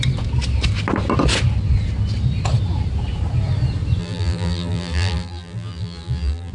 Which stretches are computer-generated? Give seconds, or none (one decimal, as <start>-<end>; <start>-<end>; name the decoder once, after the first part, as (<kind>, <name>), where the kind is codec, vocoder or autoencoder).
4.0-6.5 (vocoder, BigVGAN v2)